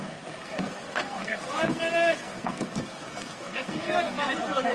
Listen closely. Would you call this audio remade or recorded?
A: remade